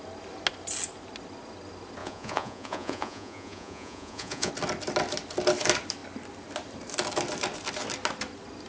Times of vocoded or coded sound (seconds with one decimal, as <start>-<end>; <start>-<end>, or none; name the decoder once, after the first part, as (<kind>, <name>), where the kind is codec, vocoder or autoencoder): 2.0-4.5 (vocoder, Vocos)